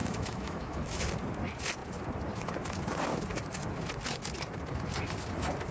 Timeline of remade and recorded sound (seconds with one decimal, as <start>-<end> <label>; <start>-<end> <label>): 0.0-1.0 remade; 1.0-5.7 recorded